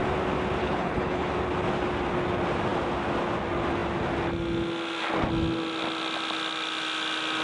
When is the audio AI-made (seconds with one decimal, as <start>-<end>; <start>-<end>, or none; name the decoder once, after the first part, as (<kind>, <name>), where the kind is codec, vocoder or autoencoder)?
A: 0.6-1.3 (codec, HILCodec)